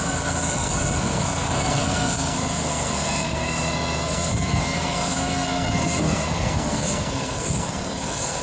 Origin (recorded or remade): remade